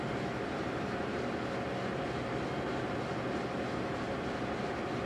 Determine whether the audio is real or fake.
real